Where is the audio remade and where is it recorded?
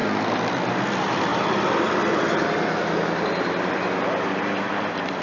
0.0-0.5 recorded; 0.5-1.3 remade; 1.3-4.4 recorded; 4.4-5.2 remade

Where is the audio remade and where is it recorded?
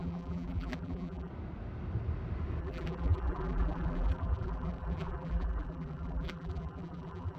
0.0-1.3 remade; 1.3-2.6 recorded; 2.6-7.4 remade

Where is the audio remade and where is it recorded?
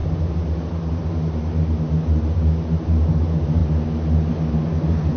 0.0-3.1 remade; 3.1-3.6 recorded; 3.6-4.3 remade; 4.3-5.2 recorded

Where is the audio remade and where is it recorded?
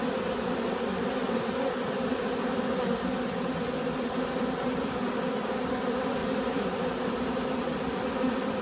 0.0-6.2 recorded; 6.2-8.1 remade; 8.1-8.6 recorded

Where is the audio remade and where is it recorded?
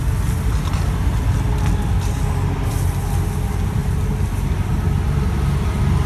0.0-6.1 recorded